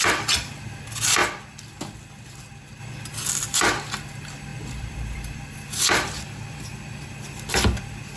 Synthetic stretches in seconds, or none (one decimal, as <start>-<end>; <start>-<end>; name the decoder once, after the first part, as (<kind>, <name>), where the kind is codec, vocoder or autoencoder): 4.5-7.1 (vocoder, BigVGAN v2)